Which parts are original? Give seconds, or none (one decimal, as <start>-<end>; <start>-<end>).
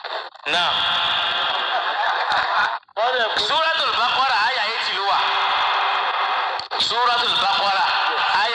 0.4-1.1; 2.9-7.2